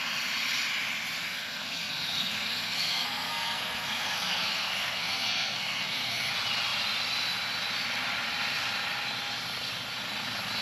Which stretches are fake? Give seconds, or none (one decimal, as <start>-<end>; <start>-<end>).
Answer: 1.2-6.3